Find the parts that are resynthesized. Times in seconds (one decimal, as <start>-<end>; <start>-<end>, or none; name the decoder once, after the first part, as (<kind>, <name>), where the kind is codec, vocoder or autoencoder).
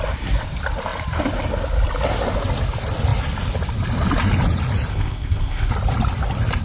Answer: 4.9-5.7 (codec, ZipCodec)